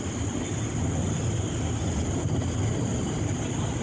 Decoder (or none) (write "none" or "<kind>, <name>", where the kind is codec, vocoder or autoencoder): none